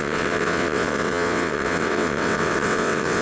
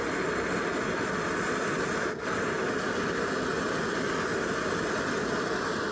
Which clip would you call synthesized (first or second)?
first